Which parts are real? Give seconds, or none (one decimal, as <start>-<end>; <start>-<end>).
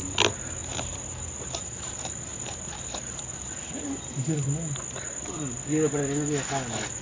0.0-7.0